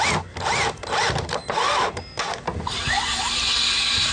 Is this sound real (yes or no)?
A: yes